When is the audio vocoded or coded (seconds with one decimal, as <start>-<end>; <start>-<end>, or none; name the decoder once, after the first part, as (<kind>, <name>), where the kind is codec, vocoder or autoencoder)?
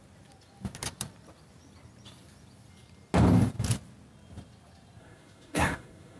5.0-6.2 (codec, SNAC)